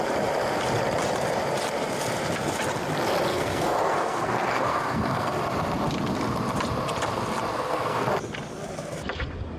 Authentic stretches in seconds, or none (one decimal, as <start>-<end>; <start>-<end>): 0.0-3.3; 5.4-7.5; 8.1-9.6